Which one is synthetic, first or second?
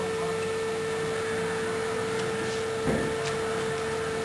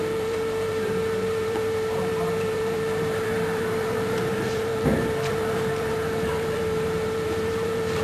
second